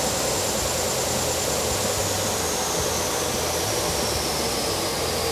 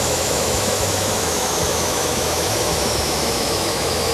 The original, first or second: first